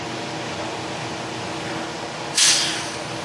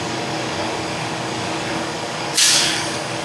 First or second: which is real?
first